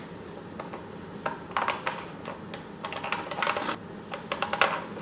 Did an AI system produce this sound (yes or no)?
no